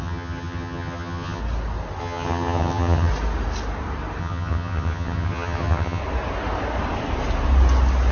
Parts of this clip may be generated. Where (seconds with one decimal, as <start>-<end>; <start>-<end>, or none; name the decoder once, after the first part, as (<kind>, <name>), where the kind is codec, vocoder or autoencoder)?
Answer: 0.0-1.4 (vocoder, HiFi-GAN); 2.0-3.1; 4.2-6.0